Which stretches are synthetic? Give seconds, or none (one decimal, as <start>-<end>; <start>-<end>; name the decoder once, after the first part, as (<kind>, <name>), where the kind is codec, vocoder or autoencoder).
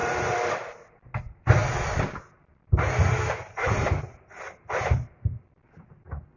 0.0-0.9 (vocoder, BigVGAN v2)